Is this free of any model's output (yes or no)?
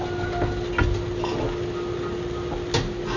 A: yes